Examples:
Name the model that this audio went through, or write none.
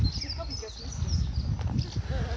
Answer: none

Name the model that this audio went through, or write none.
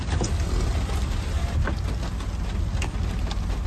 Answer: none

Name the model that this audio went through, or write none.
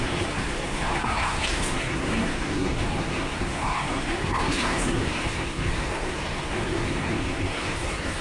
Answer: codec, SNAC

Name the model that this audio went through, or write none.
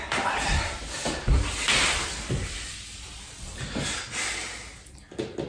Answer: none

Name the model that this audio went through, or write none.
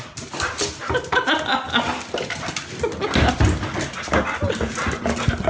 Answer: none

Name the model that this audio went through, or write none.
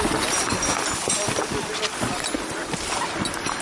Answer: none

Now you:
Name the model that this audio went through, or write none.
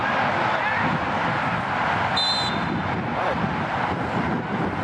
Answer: none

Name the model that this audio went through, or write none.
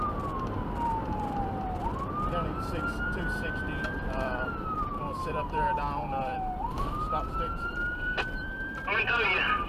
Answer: vocoder, BigVGAN v2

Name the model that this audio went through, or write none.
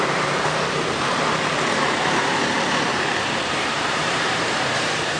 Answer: vocoder, BigVGAN v2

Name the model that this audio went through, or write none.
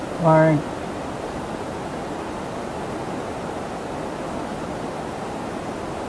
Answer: none